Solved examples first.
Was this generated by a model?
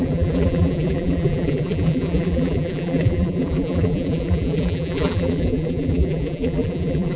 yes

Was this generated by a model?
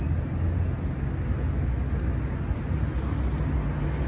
no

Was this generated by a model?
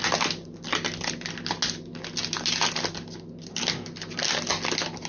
no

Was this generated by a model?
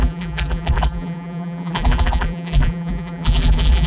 yes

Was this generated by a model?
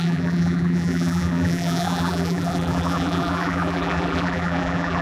yes